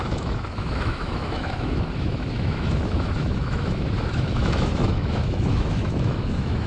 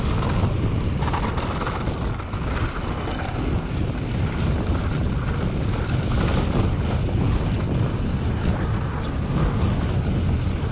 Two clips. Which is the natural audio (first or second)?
second